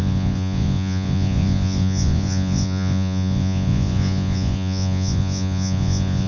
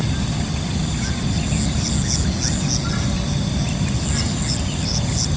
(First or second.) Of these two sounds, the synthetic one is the first